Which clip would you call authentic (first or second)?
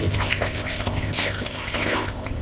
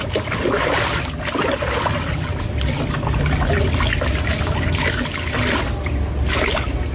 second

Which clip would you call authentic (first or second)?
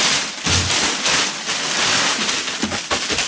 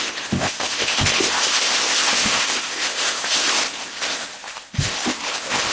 first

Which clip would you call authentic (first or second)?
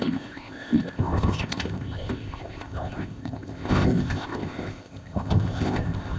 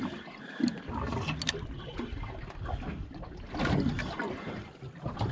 second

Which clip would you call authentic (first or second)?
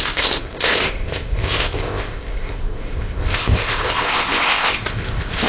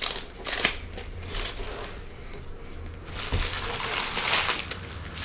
second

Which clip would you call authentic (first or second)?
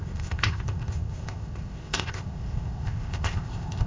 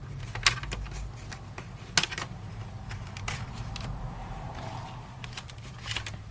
second